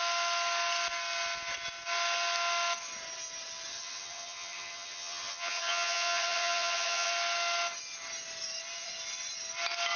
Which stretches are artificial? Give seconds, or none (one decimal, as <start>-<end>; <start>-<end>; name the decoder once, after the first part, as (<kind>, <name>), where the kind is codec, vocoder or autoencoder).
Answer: 3.7-7.1 (vocoder, HiFi-GAN)